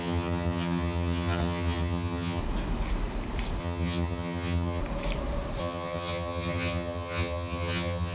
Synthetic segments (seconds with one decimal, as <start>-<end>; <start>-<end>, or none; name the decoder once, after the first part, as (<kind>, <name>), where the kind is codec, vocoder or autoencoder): 0.0-2.4 (vocoder, HiFi-GAN); 3.6-4.8; 5.6-8.1